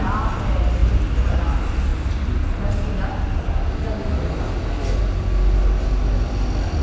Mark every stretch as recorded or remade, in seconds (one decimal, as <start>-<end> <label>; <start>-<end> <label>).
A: 0.0-6.8 recorded